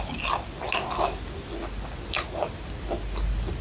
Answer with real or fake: real